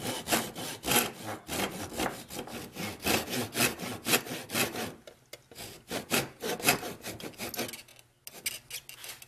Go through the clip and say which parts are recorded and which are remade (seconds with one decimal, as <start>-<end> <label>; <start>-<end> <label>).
0.0-9.3 recorded